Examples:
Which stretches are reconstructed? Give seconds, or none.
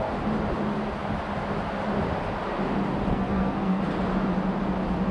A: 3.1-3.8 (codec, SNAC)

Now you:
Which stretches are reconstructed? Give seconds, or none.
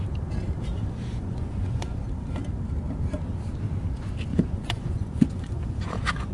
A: 0.7-2.0 (vocoder, Vocos); 4.3-6.3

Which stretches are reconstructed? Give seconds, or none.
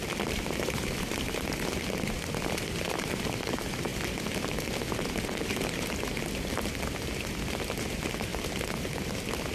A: 0.0-3.9 (vocoder, BigVGAN v2); 5.9-8.3; 8.8-9.5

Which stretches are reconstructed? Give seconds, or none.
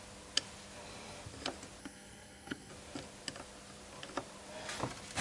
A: 1.8-2.7 (codec, SNAC)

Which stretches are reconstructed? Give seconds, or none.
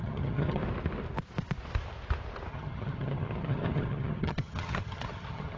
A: 0.0-0.6 (vocoder, HiFi-GAN); 2.5-5.6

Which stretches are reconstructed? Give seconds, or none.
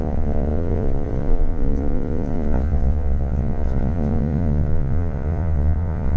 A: 0.0-6.2 (vocoder, Vocos)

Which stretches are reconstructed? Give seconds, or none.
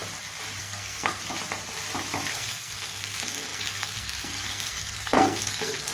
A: 0.6-1.2 (codec, SNAC); 2.3-5.9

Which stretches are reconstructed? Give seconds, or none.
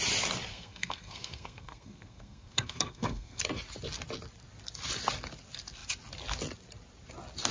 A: 0.5-3.4 (codec, SNAC)